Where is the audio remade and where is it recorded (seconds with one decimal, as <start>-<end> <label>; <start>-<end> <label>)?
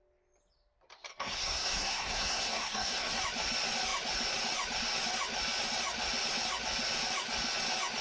0.0-1.1 recorded; 1.1-3.2 remade; 3.2-8.0 recorded